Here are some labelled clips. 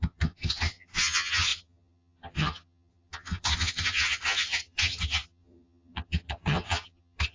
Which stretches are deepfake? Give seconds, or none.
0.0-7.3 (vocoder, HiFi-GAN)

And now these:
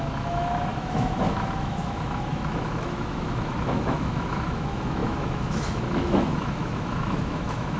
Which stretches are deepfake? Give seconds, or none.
0.0-7.8 (autoencoder, DAC-VAE)

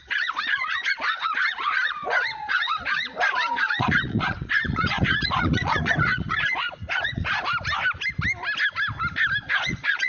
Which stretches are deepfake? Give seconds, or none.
0.0-7.5 (vocoder, Vocos); 9.4-10.1

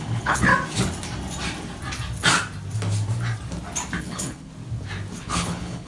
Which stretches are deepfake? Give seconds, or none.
0.0-0.5 (codec, HILCodec); 4.0-4.5; 5.2-5.9

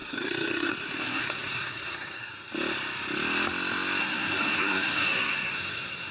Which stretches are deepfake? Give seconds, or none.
0.0-2.5 (codec, SNAC); 4.0-6.1